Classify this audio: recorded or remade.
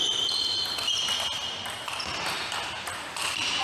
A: recorded